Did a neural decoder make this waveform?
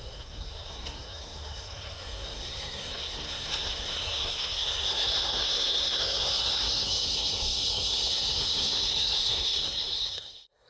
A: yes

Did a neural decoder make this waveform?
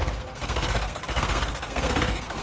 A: yes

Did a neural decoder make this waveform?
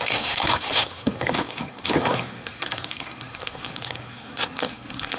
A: yes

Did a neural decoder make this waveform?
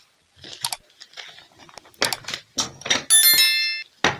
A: no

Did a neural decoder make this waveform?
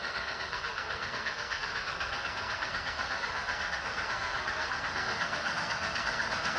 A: yes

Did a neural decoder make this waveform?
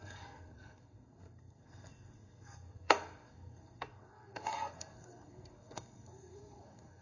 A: yes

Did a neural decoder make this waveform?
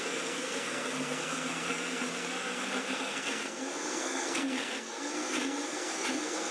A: yes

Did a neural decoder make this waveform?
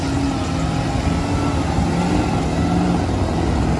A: no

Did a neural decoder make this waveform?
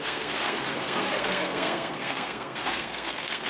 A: yes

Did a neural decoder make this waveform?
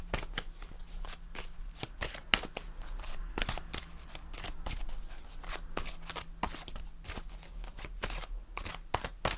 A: no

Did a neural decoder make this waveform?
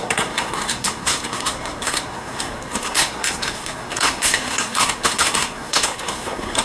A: yes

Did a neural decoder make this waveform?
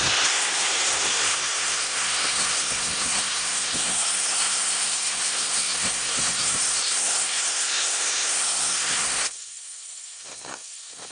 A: yes